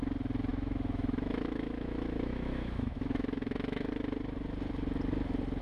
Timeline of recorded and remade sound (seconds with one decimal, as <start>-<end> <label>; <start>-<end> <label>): 0.0-0.5 recorded; 0.5-3.9 remade; 3.9-5.6 recorded